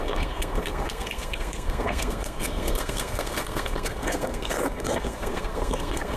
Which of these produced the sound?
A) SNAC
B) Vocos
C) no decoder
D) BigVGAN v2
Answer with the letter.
A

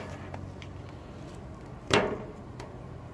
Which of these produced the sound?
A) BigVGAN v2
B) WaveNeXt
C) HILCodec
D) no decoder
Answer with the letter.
D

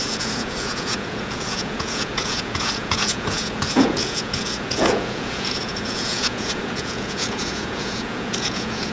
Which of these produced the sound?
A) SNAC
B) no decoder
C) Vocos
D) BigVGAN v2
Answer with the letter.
C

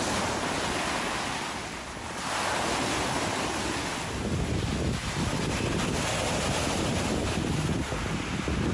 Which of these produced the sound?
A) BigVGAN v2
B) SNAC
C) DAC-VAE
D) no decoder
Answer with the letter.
D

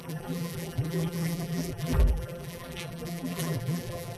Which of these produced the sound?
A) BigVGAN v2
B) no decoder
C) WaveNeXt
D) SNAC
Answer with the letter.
A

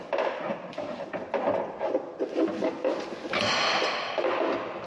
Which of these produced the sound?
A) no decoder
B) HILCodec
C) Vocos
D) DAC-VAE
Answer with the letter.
A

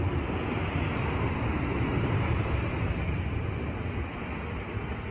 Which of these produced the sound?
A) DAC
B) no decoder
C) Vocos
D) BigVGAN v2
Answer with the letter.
B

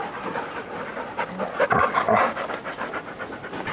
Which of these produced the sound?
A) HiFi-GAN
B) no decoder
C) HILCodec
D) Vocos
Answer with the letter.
B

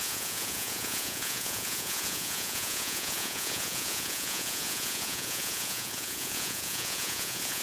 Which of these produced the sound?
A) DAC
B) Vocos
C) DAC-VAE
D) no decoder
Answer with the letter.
B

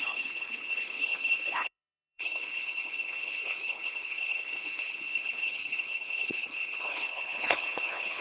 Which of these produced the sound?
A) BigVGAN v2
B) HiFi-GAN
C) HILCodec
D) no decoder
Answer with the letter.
C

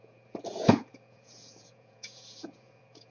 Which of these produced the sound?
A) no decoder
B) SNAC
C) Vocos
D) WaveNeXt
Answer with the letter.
C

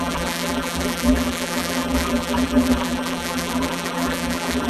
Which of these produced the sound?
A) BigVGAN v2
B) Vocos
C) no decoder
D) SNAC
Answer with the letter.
A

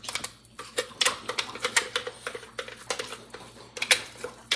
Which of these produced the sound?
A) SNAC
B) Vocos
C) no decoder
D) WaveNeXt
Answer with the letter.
C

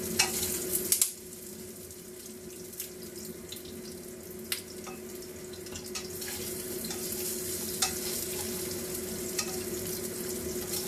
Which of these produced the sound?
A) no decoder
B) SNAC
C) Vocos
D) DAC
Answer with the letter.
A